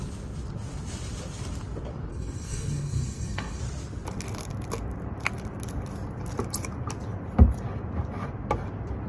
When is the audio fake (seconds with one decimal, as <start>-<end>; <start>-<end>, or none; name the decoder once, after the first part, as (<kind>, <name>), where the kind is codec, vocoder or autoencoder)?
2.1-3.6 (codec, SNAC)